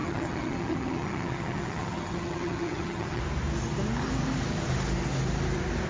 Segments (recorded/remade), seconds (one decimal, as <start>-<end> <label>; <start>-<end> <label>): 0.0-3.2 remade; 3.2-5.9 recorded